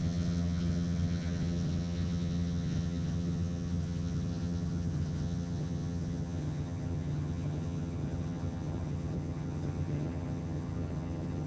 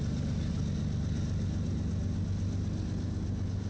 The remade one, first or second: first